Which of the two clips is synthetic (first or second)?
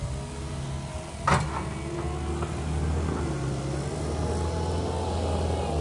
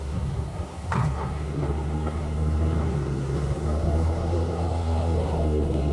second